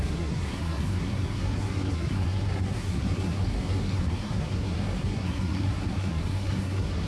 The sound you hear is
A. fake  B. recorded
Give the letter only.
A